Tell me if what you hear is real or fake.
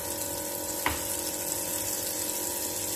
real